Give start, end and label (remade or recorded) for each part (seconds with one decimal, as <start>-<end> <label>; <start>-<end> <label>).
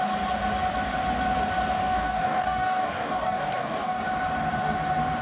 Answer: 0.0-1.8 recorded; 1.8-4.0 remade; 4.0-5.2 recorded